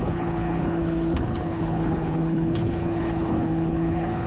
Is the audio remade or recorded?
remade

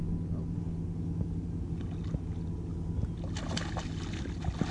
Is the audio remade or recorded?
recorded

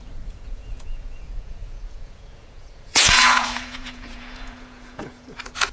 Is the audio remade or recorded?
remade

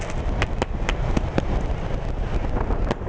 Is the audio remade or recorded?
recorded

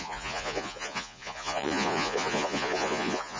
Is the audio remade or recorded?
remade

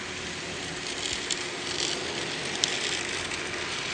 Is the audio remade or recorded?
recorded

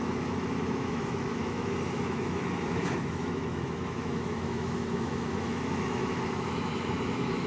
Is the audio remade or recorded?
remade